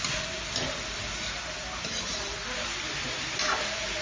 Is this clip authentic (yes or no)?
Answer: yes